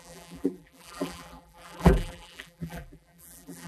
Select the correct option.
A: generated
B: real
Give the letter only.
A